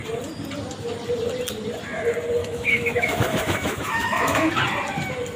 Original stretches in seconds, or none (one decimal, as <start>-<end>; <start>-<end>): 0.0-2.4; 4.5-5.4